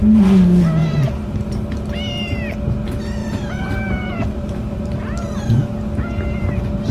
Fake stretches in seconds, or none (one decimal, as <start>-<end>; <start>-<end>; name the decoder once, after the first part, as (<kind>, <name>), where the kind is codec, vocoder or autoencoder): 0.8-1.5 (vocoder, BigVGAN v2); 3.2-5.5